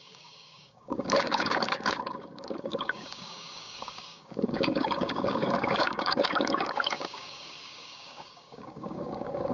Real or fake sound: fake